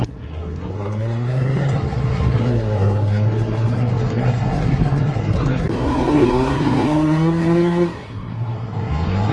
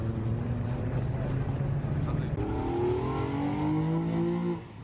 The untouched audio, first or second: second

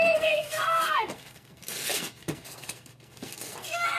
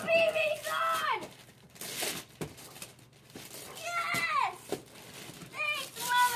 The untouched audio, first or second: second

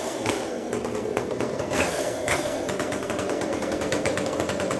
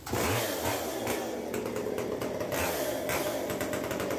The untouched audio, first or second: second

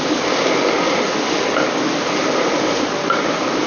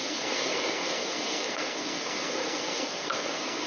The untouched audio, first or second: first